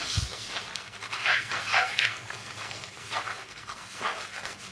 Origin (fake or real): fake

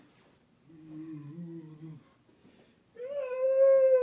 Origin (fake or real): real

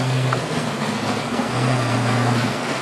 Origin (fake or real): fake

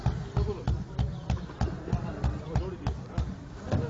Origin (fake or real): real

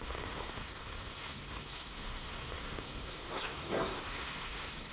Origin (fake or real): fake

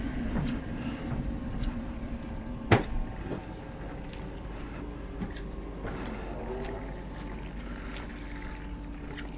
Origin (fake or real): real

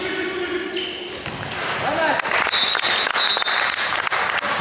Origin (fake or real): real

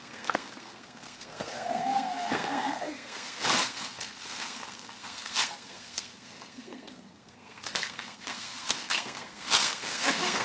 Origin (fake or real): fake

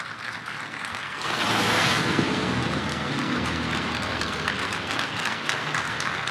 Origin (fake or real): fake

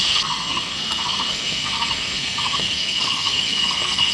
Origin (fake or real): fake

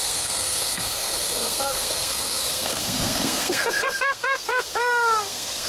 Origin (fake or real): fake